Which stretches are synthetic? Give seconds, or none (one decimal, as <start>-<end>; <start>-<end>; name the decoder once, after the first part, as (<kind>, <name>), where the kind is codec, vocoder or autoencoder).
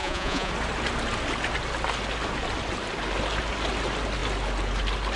0.0-0.5 (vocoder, Vocos)